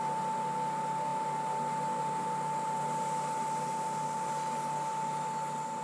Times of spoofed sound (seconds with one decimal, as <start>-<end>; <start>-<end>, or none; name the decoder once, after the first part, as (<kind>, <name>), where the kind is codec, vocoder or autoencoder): none